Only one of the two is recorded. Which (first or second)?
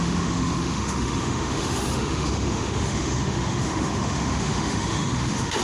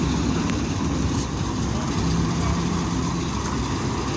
second